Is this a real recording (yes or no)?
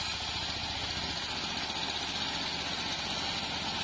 yes